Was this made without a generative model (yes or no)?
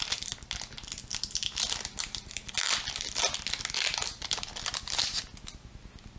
yes